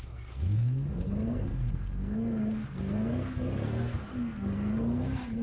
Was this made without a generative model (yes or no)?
no